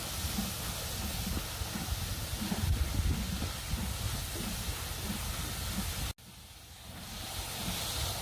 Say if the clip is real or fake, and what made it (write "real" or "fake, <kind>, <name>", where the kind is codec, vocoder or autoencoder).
real